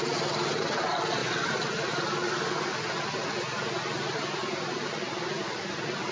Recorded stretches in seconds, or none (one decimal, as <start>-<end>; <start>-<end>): 0.0-6.1